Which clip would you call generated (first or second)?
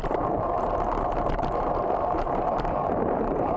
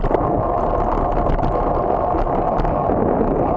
first